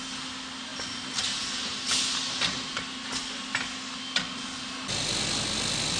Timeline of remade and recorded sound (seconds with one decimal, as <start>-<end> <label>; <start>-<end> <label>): 0.0-6.0 recorded